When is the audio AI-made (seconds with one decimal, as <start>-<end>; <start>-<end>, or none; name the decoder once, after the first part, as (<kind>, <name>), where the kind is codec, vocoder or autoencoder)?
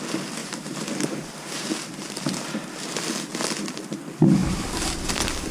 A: 0.4-1.2 (vocoder, BigVGAN v2); 4.4-5.1